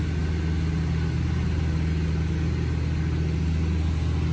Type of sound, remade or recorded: recorded